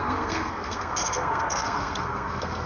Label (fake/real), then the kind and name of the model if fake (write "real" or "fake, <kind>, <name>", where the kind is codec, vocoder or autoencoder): fake, codec, SNAC